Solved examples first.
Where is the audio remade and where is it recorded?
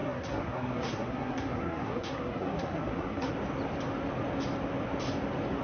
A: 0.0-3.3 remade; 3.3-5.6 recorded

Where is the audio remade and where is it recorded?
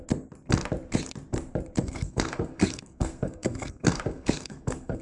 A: 0.0-1.8 recorded; 1.8-5.0 remade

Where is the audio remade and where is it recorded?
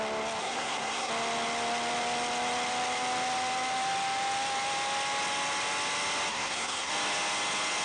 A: 0.0-0.4 recorded; 0.4-1.1 remade; 1.1-6.3 recorded; 6.3-6.9 remade; 6.9-7.8 recorded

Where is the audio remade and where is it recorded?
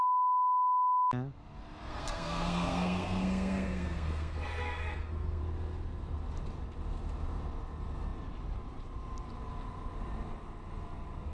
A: 0.0-1.9 recorded; 1.9-5.4 remade; 5.4-11.3 recorded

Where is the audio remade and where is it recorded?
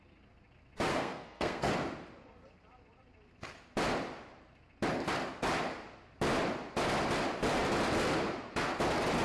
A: 0.0-0.9 recorded; 0.9-1.7 remade; 1.7-9.2 recorded